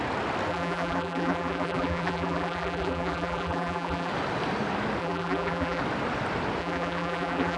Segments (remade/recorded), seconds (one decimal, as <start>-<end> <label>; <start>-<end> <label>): 0.0-0.5 recorded; 0.5-4.1 remade; 4.1-5.0 recorded; 5.0-5.8 remade; 5.8-6.6 recorded; 6.6-7.6 remade